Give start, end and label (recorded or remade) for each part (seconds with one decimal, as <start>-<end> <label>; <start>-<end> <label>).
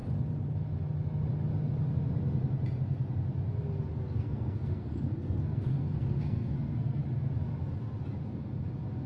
0.0-4.2 recorded; 4.2-7.0 remade; 7.0-9.1 recorded